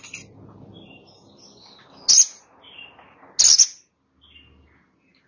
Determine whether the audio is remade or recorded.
recorded